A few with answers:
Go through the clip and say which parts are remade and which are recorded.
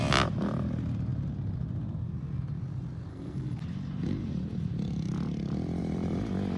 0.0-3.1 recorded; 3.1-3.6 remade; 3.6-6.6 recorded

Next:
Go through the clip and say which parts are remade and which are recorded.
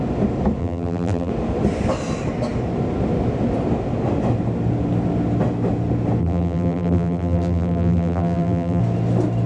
0.0-0.6 recorded; 0.6-1.3 remade; 1.3-6.2 recorded; 6.2-8.8 remade; 8.8-9.5 recorded